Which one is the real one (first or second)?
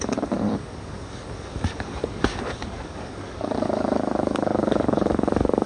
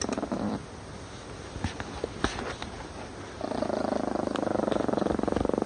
second